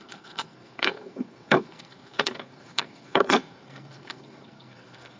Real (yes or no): no